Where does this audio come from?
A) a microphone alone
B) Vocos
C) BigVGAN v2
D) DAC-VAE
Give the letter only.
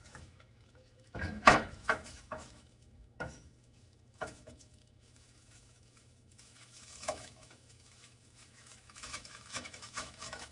D